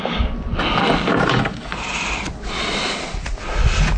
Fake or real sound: real